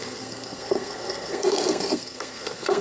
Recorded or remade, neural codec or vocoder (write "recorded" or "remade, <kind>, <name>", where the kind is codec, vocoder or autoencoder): remade, codec, SNAC